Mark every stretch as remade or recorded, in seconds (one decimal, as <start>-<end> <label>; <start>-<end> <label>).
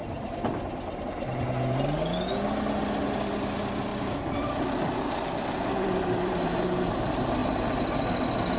0.0-3.9 recorded; 3.9-7.0 remade; 7.0-8.6 recorded